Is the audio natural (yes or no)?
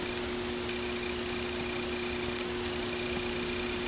yes